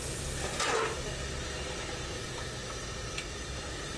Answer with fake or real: real